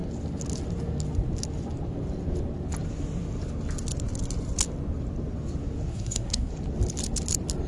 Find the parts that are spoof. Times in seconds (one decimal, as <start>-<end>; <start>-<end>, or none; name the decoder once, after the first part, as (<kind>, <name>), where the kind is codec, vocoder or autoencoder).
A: 5.9-6.5 (codec, SNAC)

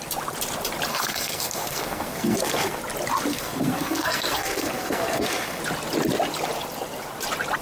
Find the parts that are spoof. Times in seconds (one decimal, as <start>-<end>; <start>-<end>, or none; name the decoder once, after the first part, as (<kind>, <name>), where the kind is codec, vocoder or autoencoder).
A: 0.9-2.8 (codec, SNAC); 3.3-5.6

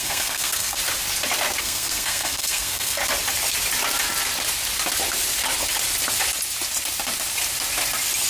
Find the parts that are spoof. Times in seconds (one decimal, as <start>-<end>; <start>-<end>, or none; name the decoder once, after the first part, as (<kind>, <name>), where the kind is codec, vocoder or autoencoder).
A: 0.0-0.8 (codec, SNAC); 1.6-3.0

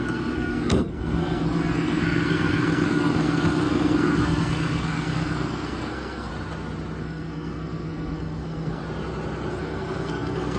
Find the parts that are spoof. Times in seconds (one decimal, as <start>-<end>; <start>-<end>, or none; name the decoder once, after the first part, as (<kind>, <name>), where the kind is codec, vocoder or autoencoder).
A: 0.0-6.3 (codec, SNAC); 7.0-8.8; 9.5-10.6